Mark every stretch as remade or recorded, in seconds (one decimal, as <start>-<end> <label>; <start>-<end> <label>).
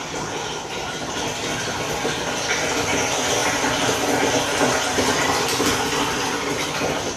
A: 0.0-7.2 recorded